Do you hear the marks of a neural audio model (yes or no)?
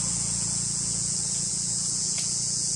yes